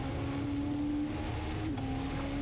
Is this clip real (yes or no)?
yes